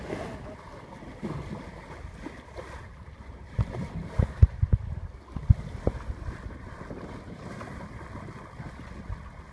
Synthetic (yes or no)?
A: no